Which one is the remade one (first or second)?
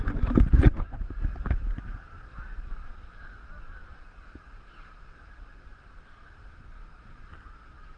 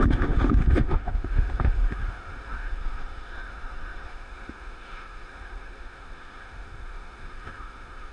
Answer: second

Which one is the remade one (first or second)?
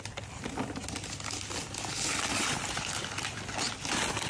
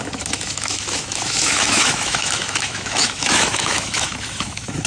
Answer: second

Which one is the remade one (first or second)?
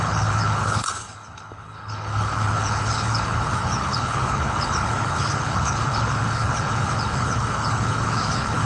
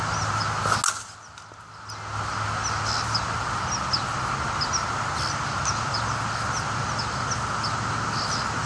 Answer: first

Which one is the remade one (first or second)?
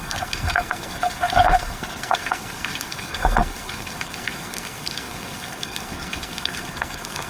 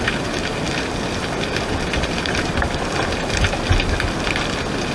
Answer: first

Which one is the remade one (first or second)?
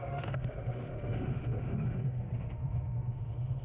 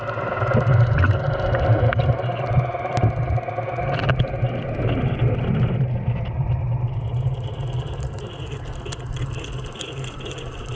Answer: first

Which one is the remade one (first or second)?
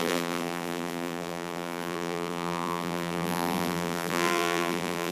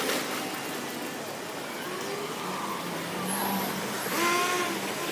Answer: first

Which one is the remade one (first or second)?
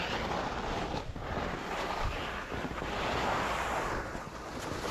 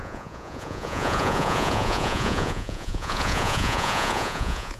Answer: second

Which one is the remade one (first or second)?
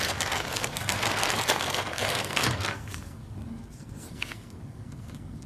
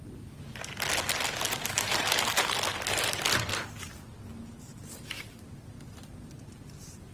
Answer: first